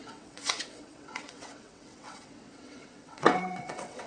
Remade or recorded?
remade